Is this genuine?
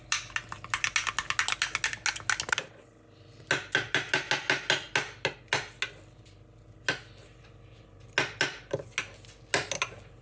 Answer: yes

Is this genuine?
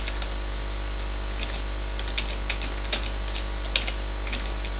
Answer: yes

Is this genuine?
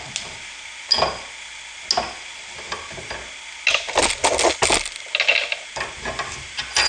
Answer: yes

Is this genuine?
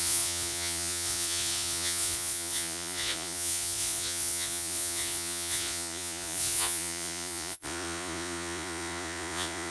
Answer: no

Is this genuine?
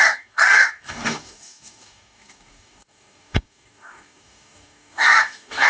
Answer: no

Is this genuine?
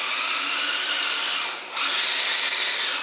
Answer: yes